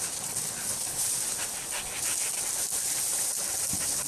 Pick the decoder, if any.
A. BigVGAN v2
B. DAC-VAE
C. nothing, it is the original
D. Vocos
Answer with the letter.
C